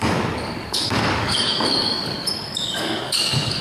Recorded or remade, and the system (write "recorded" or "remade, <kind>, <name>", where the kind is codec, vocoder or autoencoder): remade, codec, DAC